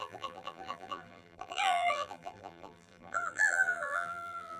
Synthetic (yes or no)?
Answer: yes